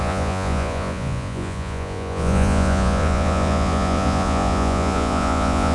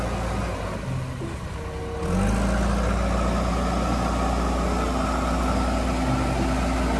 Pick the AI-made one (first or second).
first